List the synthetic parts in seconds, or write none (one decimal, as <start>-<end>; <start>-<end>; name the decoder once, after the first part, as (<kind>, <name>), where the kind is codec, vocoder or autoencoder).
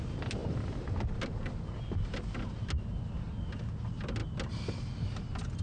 none